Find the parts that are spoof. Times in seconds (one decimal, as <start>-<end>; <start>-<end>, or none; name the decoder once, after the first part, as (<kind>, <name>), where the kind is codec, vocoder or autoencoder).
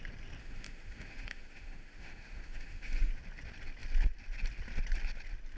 0.4-3.1 (autoencoder, DAC-VAE)